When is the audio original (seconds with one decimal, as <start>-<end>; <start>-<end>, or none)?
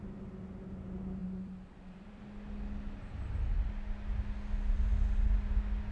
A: 0.0-1.2; 2.2-5.9